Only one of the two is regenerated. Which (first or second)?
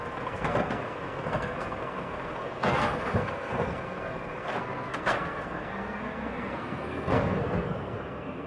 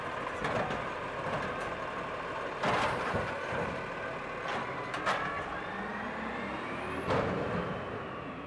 first